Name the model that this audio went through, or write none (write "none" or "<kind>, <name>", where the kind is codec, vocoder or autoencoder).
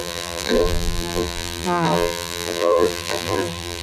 vocoder, BigVGAN v2